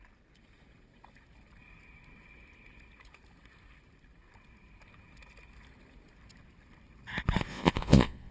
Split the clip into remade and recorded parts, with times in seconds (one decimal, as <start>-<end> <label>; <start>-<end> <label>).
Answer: 0.0-7.5 recorded; 7.5-8.3 remade